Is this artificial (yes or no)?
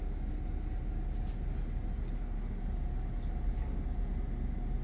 no